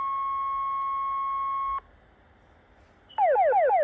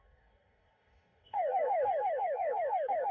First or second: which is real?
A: first